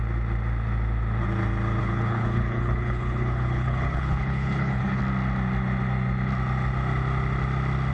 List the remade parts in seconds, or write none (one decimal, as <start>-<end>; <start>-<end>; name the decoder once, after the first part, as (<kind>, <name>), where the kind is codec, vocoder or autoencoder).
1.8-5.0 (codec, HILCodec)